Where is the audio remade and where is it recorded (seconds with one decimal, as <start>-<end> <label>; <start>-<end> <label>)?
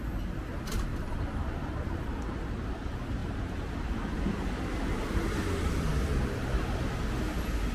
0.0-0.9 recorded; 0.9-2.0 remade; 2.0-3.2 recorded; 3.2-4.2 remade; 4.2-7.7 recorded